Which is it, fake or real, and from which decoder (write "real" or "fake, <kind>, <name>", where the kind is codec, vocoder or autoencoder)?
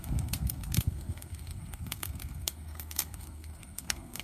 fake, codec, SNAC